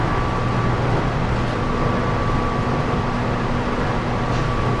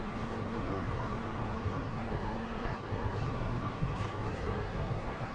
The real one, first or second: first